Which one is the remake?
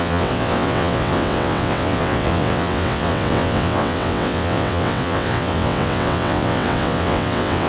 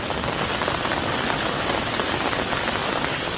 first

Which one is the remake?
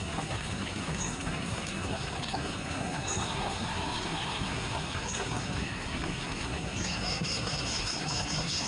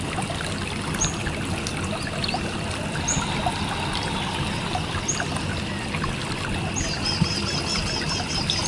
first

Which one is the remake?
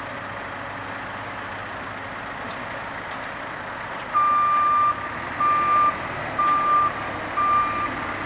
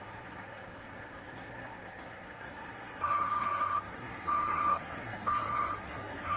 second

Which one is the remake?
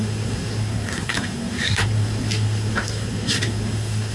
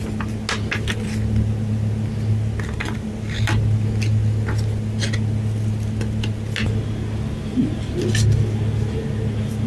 first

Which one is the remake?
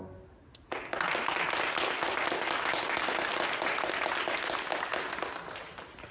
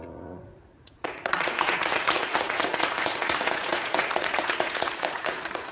second